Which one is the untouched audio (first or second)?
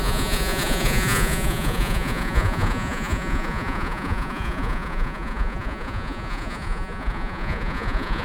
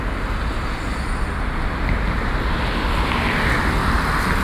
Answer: second